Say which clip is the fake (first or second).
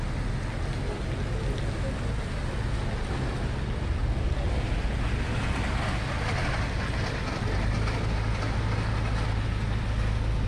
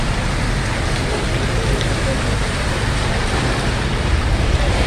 second